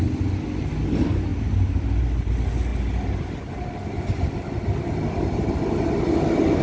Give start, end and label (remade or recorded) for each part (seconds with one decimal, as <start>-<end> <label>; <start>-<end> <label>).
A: 0.0-6.6 recorded